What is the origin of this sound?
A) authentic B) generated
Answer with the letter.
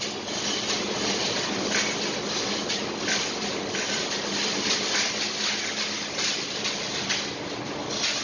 A